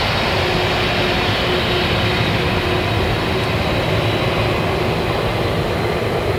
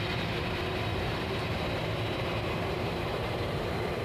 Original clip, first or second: first